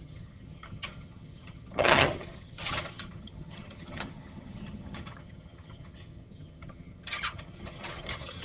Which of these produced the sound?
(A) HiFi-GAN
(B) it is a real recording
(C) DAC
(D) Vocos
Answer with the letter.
A